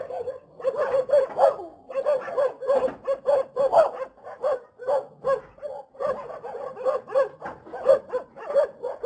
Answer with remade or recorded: recorded